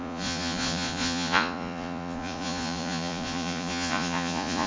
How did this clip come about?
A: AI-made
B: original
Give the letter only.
A